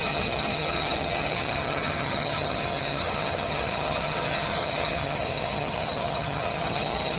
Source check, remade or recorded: remade